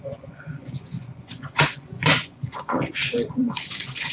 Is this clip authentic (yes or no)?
no